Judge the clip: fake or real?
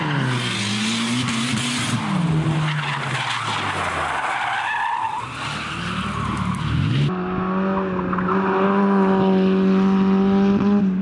real